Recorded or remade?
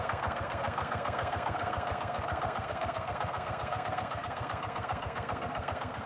remade